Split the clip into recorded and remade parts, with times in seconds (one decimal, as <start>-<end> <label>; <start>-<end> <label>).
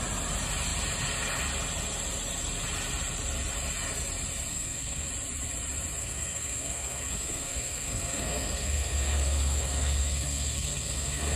0.0-4.5 recorded; 4.5-5.1 remade; 5.1-6.0 recorded; 6.0-11.4 remade